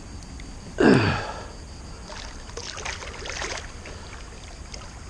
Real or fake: real